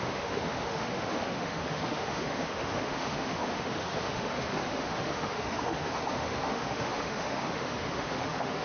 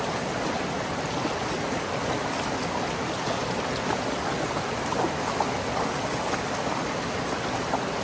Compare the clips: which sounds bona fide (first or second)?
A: second